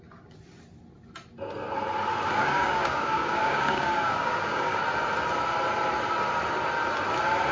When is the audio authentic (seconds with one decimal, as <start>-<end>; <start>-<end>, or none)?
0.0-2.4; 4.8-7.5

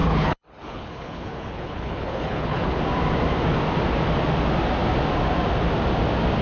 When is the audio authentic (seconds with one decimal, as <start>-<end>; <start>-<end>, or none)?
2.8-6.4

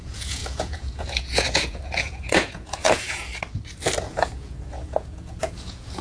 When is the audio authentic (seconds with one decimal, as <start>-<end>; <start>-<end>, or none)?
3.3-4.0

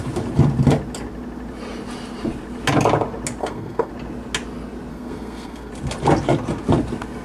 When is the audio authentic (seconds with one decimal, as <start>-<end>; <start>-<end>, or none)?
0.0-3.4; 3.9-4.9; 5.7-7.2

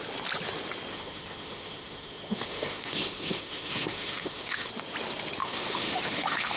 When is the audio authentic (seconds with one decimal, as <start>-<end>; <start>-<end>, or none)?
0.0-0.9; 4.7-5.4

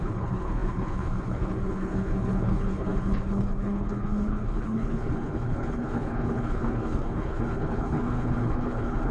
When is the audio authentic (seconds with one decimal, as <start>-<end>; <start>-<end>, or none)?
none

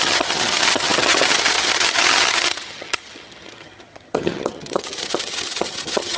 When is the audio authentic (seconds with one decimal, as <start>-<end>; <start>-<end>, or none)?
none